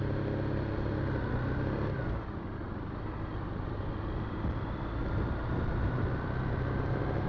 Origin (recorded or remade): recorded